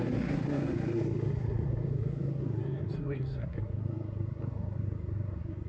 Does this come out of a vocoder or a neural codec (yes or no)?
yes